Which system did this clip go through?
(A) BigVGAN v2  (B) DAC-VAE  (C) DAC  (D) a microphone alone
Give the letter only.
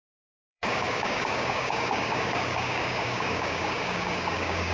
C